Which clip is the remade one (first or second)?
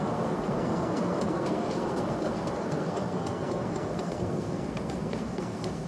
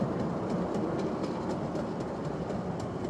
first